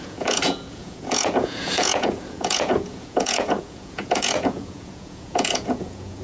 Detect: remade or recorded remade